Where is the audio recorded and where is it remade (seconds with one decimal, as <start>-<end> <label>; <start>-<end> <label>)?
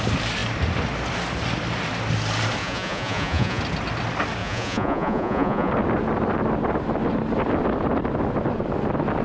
0.0-2.6 recorded; 2.6-3.6 remade; 3.6-4.4 recorded; 4.4-5.7 remade; 5.7-9.2 recorded